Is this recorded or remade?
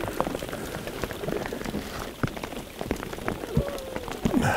recorded